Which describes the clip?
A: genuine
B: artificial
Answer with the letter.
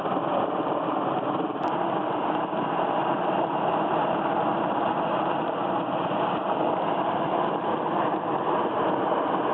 A